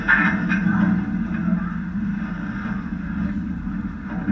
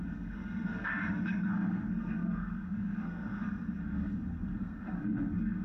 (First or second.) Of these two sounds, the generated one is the second